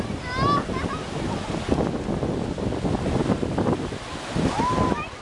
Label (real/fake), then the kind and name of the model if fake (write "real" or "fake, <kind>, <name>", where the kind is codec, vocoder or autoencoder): real